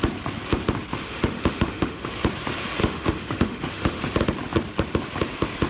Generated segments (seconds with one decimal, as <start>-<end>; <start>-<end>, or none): 0.9-2.1; 2.8-4.0